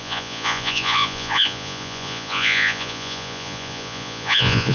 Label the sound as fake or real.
fake